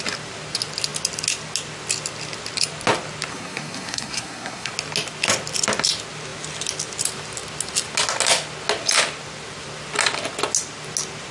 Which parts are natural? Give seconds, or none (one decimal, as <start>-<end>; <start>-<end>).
0.0-3.3; 4.7-11.3